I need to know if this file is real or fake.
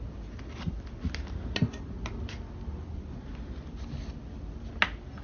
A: real